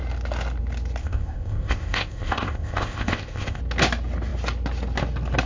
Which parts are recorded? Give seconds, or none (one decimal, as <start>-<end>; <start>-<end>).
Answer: 0.0-1.0; 3.6-5.5